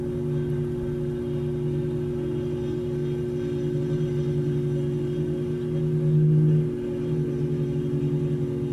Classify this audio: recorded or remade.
recorded